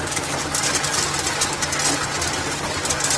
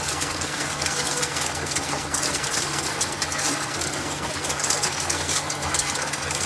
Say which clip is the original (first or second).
first